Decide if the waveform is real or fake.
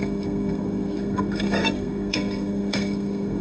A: fake